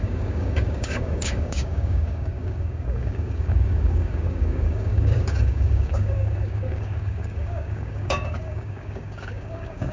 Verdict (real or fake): fake